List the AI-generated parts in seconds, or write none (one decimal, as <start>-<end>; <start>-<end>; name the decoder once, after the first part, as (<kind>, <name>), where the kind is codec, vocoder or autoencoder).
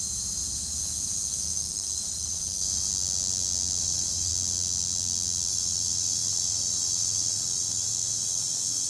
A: 0.0-2.9 (autoencoder, DAC-VAE); 3.8-4.3; 5.5-8.9